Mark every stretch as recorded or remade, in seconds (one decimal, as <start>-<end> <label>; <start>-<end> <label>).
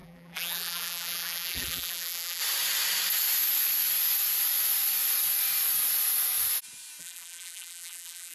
0.0-2.4 remade; 2.4-7.0 recorded; 7.0-8.3 remade